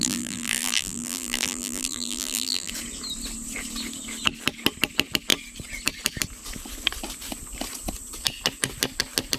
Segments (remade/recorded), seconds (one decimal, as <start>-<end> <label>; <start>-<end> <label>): 0.0-2.7 remade; 2.7-9.4 recorded